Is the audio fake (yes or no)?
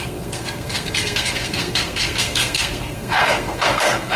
yes